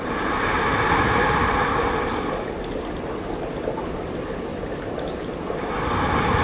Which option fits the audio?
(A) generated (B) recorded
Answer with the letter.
B